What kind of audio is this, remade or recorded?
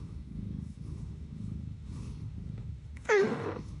remade